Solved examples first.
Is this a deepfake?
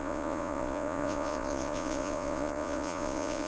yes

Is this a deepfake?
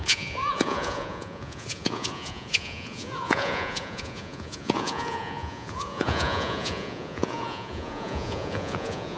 yes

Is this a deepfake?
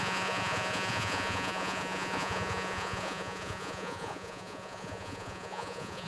yes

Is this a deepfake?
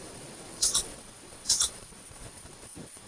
yes